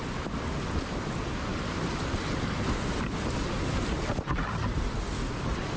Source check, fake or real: real